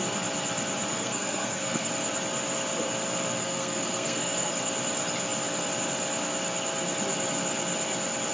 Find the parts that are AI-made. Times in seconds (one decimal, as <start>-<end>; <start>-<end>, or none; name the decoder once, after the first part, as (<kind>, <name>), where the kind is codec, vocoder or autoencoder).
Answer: 0.9-1.9 (codec, SNAC); 3.4-4.5

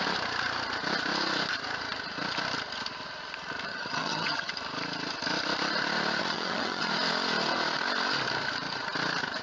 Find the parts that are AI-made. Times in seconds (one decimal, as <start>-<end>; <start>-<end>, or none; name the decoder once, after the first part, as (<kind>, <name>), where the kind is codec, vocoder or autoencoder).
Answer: 3.7-4.5 (vocoder, HiFi-GAN); 6.2-6.9

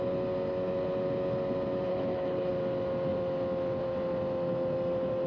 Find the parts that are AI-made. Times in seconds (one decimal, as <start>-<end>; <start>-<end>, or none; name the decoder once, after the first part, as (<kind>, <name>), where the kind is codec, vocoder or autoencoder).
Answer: 1.9-2.5 (codec, HILCodec)

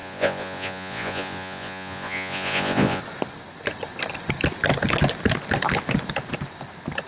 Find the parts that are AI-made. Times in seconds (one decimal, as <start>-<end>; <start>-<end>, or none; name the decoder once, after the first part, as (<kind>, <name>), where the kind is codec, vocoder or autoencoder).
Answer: 0.0-3.0 (vocoder, Vocos)

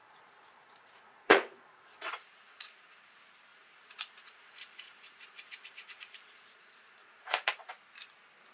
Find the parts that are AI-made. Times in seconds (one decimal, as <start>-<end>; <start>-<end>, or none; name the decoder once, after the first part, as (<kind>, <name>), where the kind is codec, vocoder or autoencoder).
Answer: 0.0-3.0 (vocoder, Vocos); 3.5-7.7